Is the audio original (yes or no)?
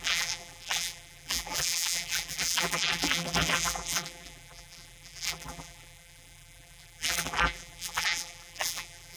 no